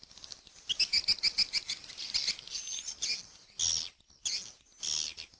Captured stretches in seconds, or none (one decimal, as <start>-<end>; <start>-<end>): 0.0-5.4